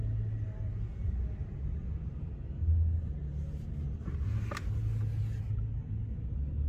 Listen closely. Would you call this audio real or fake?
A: real